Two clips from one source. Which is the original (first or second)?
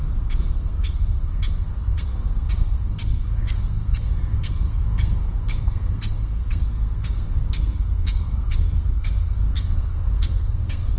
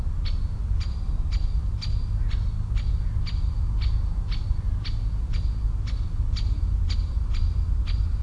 second